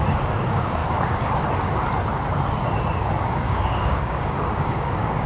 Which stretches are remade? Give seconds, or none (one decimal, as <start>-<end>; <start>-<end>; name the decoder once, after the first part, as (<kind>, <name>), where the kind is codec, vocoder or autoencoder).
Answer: 0.0-0.8 (codec, DAC); 3.2-5.3